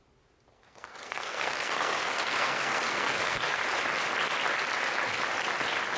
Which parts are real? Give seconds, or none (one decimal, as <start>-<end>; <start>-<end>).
0.0-0.5; 3.6-6.0